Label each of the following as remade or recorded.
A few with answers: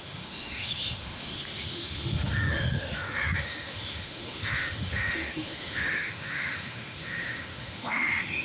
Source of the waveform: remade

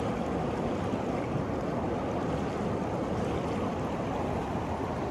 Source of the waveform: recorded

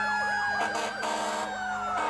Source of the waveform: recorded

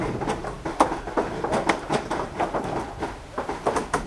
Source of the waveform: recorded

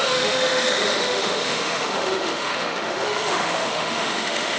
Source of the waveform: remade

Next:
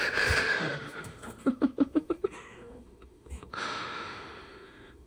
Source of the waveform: remade